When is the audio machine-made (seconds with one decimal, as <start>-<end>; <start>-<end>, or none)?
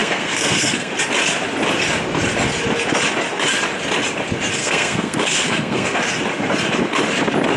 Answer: 0.0-0.9; 4.6-6.0